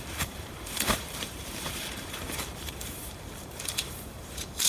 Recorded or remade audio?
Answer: remade